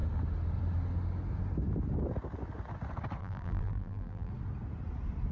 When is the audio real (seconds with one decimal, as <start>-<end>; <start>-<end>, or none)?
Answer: 0.0-3.2; 4.3-5.3